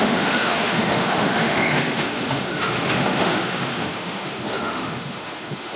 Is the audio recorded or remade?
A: remade